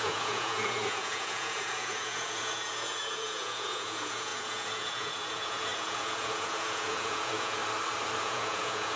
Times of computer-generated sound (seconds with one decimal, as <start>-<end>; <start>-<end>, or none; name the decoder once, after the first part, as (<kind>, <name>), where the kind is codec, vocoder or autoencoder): 0.0-7.6 (vocoder, Vocos); 8.2-9.0

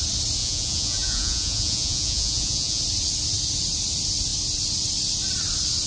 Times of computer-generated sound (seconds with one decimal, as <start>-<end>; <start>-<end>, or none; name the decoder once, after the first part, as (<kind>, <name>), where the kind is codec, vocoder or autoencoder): 0.4-2.8 (vocoder, Vocos)